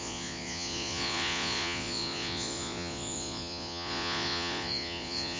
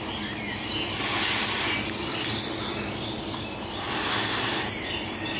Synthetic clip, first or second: first